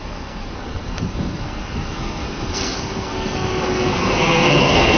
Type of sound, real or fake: fake